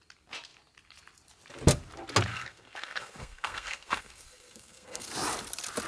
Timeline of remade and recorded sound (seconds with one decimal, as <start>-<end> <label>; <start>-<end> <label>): 0.0-2.3 recorded; 2.3-5.1 remade; 5.1-5.9 recorded